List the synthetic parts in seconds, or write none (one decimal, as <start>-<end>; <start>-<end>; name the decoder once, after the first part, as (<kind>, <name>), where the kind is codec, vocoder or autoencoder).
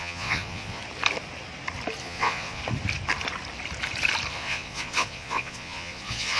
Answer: 0.0-0.8 (vocoder, Vocos); 2.0-2.6; 4.3-6.4